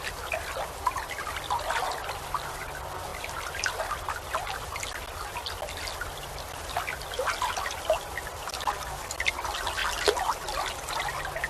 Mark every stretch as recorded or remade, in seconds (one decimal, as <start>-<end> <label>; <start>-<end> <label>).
0.0-11.5 recorded